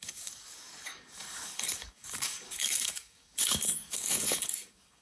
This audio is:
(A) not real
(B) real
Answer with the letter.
A